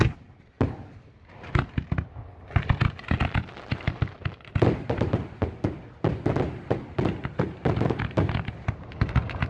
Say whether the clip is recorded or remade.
recorded